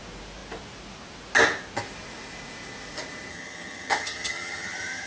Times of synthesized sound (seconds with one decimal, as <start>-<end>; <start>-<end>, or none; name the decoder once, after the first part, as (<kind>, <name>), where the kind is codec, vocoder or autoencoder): 3.3-5.1 (vocoder, HiFi-GAN)